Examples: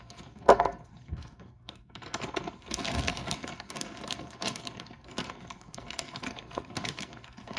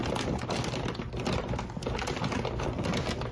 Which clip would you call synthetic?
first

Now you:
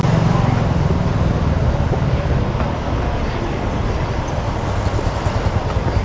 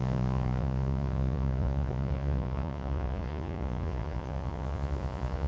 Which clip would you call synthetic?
second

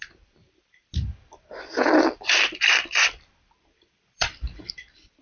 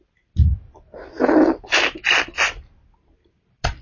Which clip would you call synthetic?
first